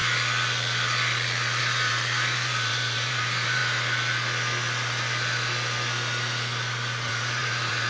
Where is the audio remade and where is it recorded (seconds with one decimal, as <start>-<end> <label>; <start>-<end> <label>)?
0.0-1.6 recorded; 1.6-3.6 remade; 3.6-7.1 recorded; 7.1-7.9 remade